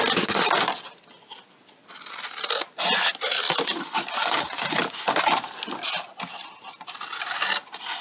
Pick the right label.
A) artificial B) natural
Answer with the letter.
B